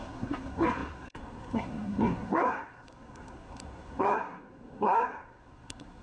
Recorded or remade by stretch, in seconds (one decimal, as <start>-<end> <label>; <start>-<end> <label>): 0.0-6.0 remade